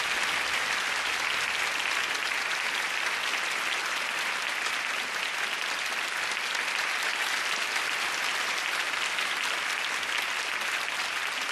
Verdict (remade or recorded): recorded